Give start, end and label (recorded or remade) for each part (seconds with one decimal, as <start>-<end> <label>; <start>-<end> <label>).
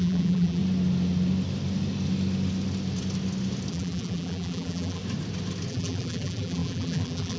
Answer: 0.0-0.6 remade; 0.6-3.7 recorded; 3.7-5.0 remade; 5.0-5.7 recorded; 5.7-7.4 remade